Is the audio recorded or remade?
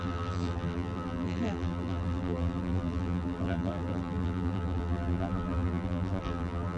remade